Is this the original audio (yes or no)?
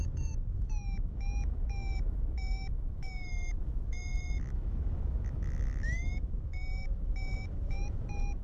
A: no